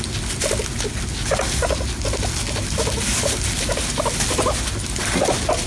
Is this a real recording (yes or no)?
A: yes